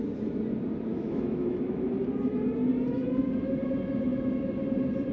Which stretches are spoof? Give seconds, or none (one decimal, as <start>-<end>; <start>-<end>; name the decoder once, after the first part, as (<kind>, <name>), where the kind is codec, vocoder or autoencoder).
0.9-1.9 (autoencoder, DAC-VAE)